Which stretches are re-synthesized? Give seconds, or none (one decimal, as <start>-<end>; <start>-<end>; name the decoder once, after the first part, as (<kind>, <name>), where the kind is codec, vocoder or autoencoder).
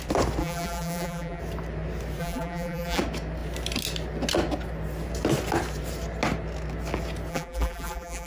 0.4-1.4 (vocoder, BigVGAN v2); 2.2-3.0; 7.3-8.3